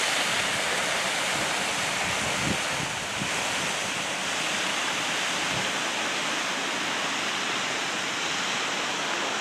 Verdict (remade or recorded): recorded